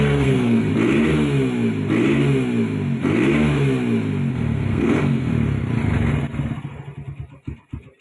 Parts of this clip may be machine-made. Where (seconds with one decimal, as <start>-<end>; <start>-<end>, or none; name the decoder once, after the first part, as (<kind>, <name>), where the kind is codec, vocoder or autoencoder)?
0.0-0.7 (codec, SNAC); 4.3-5.3